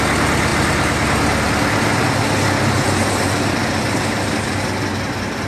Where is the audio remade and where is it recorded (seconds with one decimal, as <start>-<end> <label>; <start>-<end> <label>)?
0.0-5.5 recorded